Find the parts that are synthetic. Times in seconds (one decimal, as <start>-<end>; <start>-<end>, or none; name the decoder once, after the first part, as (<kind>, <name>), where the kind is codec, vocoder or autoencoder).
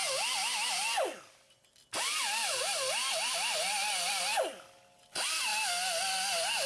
none